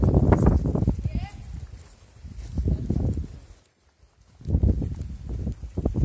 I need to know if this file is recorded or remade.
recorded